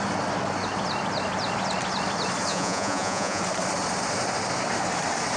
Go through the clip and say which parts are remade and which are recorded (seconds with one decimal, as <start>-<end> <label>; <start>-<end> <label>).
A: 0.0-2.5 recorded; 2.5-3.4 remade; 3.4-5.4 recorded